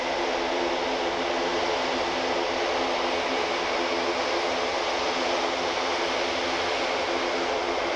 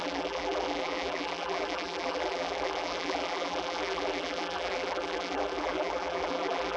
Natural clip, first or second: first